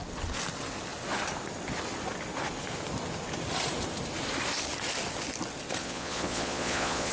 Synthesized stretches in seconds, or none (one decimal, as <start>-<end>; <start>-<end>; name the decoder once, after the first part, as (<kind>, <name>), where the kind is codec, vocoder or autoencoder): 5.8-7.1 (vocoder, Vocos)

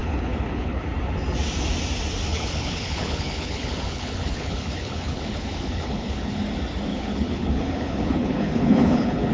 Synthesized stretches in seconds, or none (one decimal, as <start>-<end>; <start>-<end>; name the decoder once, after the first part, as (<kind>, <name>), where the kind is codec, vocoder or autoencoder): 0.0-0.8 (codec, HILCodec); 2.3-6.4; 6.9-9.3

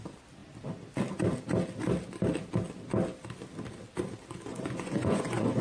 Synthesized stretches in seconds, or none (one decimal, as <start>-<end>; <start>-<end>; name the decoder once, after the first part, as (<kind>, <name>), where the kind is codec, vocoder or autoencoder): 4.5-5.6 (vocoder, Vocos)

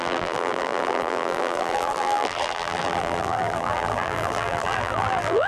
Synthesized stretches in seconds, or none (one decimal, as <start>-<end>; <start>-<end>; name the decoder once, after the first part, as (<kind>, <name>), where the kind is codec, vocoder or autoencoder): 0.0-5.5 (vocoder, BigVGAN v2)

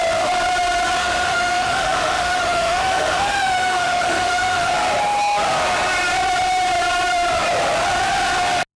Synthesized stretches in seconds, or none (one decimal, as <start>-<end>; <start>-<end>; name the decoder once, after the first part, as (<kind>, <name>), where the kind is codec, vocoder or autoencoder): 1.0-4.7 (autoencoder, DAC-VAE)

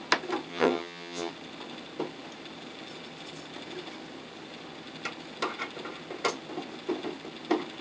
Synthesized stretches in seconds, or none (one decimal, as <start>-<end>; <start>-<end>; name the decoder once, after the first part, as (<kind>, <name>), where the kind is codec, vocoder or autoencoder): 0.5-1.3 (vocoder, HiFi-GAN)